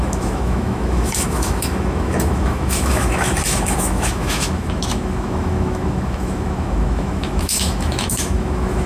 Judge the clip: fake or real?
fake